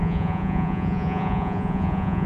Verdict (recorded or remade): remade